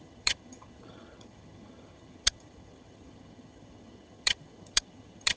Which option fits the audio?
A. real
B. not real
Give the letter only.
B